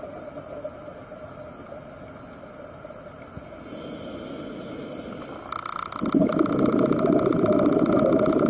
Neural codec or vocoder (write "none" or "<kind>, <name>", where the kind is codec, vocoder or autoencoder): none